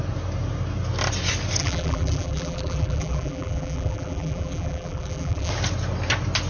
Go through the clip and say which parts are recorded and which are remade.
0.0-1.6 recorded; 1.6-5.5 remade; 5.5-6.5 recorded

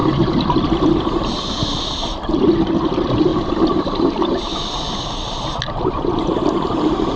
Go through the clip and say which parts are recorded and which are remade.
0.0-2.3 remade; 2.3-3.3 recorded; 3.3-6.8 remade; 6.8-7.2 recorded

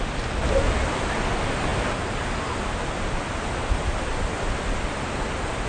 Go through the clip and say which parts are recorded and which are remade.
0.0-5.7 recorded

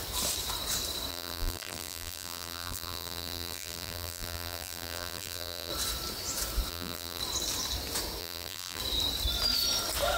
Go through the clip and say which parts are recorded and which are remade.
0.0-1.1 recorded; 1.1-5.7 remade; 5.7-6.7 recorded; 6.7-7.2 remade; 7.2-8.2 recorded; 8.2-8.8 remade; 8.8-10.2 recorded

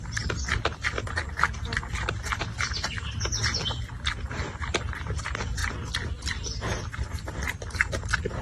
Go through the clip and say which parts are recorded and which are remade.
0.0-8.4 recorded

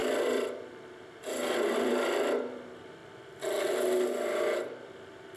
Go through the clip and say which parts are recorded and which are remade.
0.0-3.0 remade; 3.0-4.8 recorded; 4.8-5.4 remade